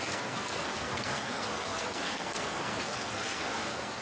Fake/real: fake